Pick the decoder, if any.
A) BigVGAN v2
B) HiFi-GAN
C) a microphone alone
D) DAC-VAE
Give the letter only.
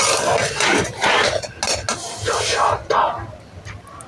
C